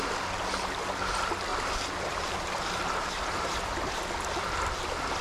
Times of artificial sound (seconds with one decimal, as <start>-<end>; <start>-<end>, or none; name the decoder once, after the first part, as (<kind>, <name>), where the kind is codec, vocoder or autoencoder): 1.5-4.0 (vocoder, BigVGAN v2)